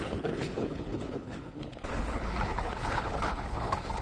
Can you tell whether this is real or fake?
fake